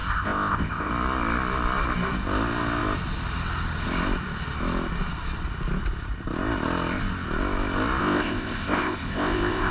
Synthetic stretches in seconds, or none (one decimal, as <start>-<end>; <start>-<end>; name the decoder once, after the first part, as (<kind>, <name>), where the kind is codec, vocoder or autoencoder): 0.0-0.9 (codec, ZipCodec); 8.0-9.7